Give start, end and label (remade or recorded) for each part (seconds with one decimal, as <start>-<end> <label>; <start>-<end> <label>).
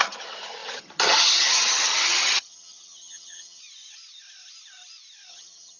0.0-3.6 remade; 3.6-5.3 recorded; 5.3-5.8 remade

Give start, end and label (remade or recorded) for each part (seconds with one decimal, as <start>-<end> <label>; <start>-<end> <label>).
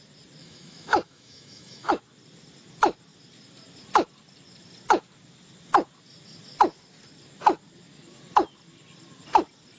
0.0-0.4 recorded; 0.4-1.9 remade; 1.9-9.8 recorded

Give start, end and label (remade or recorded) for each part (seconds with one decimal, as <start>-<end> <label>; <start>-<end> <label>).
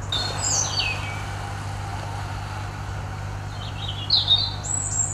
0.0-5.1 recorded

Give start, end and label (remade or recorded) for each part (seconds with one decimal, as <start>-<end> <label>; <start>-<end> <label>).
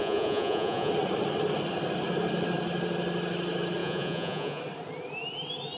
0.0-0.9 remade; 0.9-3.8 recorded; 3.8-4.6 remade; 4.6-5.8 recorded